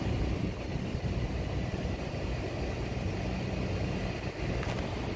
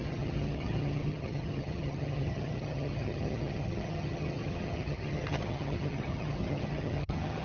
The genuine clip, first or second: first